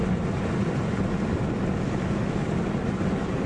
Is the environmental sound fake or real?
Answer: real